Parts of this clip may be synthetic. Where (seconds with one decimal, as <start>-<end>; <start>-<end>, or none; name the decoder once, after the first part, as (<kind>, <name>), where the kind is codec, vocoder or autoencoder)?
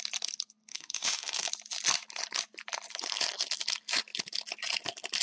0.7-1.5 (autoencoder, DAC-VAE)